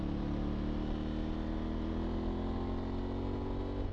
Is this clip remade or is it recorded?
recorded